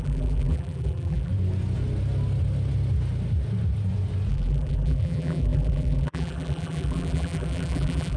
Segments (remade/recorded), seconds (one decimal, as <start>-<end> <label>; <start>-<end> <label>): 0.0-1.3 remade; 1.3-4.3 recorded; 4.3-8.2 remade